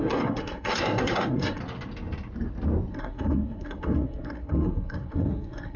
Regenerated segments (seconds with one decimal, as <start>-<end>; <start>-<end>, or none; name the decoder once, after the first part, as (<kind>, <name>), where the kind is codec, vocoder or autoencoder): 0.0-1.6 (codec, SNAC); 2.9-5.8